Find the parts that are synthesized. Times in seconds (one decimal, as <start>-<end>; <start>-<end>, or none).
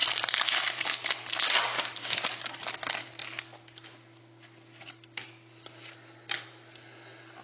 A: none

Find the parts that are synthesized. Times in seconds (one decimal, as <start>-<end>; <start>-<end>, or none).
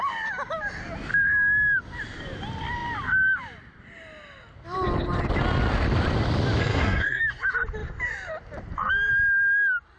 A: 6.6-7.2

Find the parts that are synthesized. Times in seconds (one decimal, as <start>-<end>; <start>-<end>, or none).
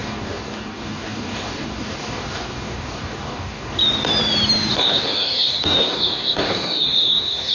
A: 0.0-3.8; 4.7-7.5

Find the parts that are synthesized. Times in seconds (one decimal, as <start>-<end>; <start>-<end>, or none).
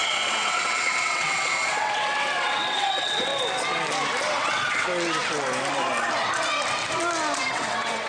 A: 0.0-3.3; 4.3-4.9; 7.5-8.1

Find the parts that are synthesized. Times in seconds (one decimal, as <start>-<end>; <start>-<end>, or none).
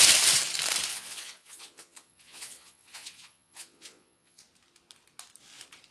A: 0.9-4.4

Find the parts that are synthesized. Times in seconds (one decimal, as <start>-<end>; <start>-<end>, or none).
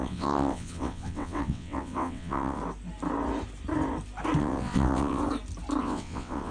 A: 0.0-2.6; 4.4-5.2; 5.8-6.5